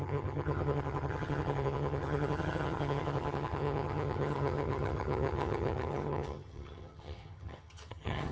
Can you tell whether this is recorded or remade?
remade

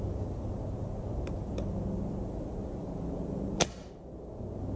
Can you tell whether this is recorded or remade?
recorded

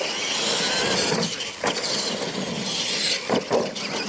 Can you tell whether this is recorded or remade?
recorded